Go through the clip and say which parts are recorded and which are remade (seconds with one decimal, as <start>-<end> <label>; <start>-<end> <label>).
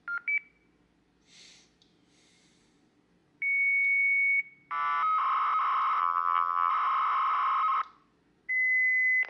0.0-6.0 recorded; 6.0-6.7 remade; 6.7-9.3 recorded